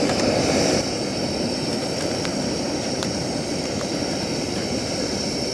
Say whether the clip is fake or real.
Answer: fake